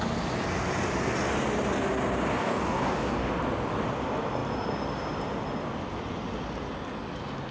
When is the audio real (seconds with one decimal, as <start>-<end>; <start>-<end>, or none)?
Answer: 0.0-2.4; 3.3-7.5